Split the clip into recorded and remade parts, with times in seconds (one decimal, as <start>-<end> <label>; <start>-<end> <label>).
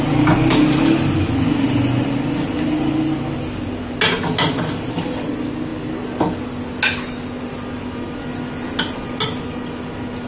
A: 0.0-10.3 recorded